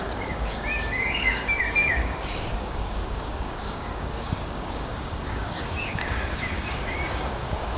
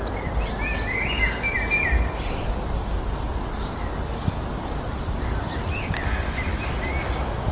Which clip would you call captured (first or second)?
second